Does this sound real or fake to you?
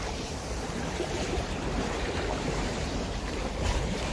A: fake